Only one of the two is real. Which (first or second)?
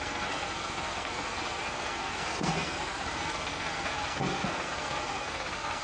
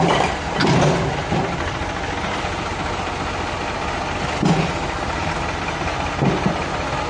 second